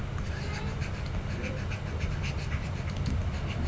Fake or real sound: real